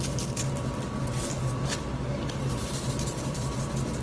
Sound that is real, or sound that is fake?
real